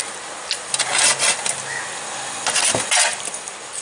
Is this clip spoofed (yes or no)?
no